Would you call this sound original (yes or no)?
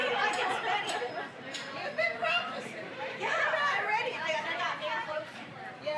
no